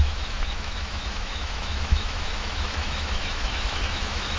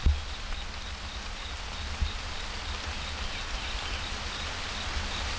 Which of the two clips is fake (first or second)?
first